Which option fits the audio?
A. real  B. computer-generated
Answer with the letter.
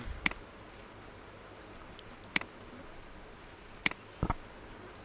A